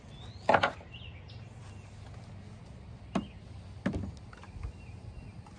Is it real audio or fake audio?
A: real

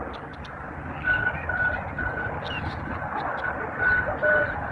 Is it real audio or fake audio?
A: real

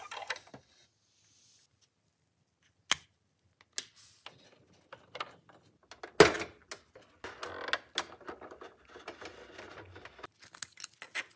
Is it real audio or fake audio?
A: real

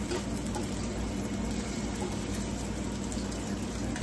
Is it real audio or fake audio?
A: real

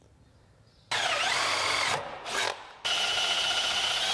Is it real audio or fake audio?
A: real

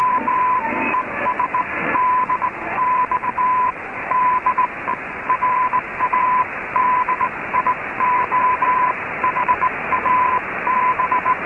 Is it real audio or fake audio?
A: fake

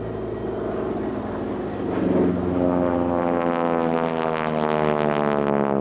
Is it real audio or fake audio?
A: real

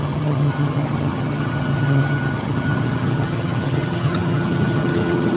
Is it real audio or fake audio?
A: fake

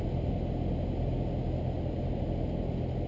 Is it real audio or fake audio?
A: real